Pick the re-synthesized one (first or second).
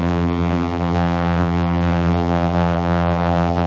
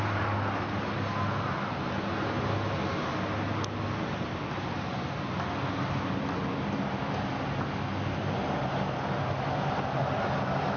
first